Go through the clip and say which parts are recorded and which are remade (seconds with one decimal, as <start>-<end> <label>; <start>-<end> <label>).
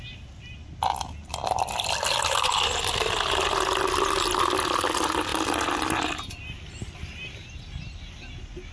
0.0-8.7 recorded